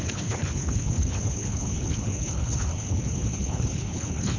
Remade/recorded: remade